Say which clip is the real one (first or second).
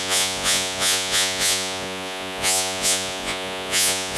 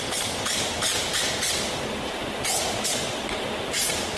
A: second